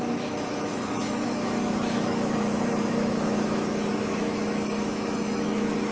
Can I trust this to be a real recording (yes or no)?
no